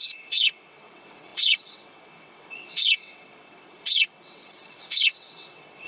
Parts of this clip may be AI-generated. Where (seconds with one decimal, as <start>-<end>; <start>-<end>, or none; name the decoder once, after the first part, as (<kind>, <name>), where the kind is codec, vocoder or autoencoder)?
0.0-5.9 (vocoder, WaveNeXt)